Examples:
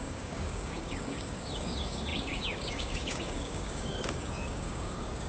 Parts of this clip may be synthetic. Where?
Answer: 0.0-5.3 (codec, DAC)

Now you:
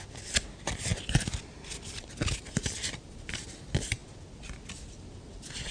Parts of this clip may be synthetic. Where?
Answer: none

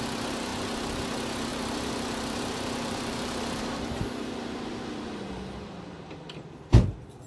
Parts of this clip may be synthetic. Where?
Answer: 0.5-1.0 (vocoder, BigVGAN v2); 1.5-5.9